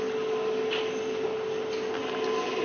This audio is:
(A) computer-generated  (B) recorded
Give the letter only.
B